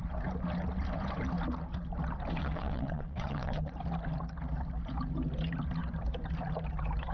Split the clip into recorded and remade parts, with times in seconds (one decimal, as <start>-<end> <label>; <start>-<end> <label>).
0.0-2.4 recorded; 2.4-3.7 remade; 3.7-7.1 recorded